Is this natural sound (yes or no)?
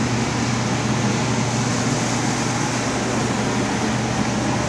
yes